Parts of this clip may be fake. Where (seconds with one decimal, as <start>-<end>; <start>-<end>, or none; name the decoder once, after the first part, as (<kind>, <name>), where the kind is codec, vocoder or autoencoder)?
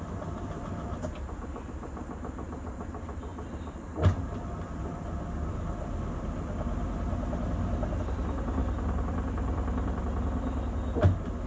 3.3-6.9 (vocoder, BigVGAN v2); 8.6-10.0